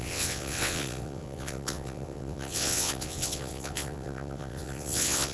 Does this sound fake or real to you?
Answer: fake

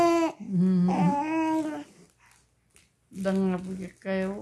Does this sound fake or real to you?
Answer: real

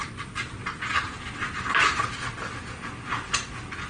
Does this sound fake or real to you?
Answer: real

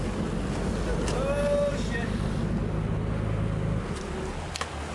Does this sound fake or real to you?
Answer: real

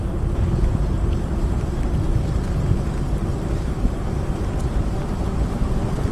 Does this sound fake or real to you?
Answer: fake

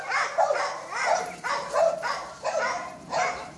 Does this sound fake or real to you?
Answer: real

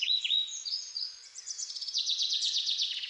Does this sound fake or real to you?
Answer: fake